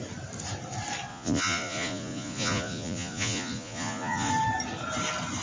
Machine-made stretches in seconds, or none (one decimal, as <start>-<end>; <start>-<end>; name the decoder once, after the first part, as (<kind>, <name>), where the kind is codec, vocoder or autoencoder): 1.1-4.3 (vocoder, Vocos)